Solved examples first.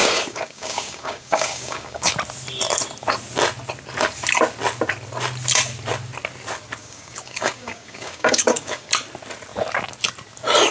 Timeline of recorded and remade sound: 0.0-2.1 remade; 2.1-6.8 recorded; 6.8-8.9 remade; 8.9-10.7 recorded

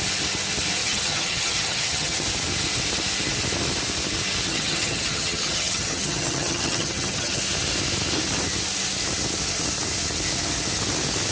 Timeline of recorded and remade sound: 0.0-0.8 recorded; 0.8-2.2 remade; 2.2-4.5 recorded; 4.5-7.4 remade; 7.4-11.3 recorded

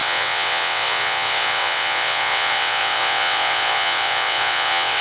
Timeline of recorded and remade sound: 0.0-5.0 remade